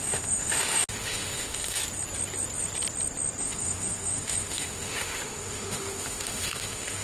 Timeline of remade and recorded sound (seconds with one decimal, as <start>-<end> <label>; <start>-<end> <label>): 0.0-1.8 remade; 1.8-3.4 recorded; 3.4-7.0 remade